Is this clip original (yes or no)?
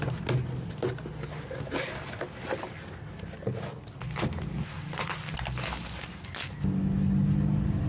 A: yes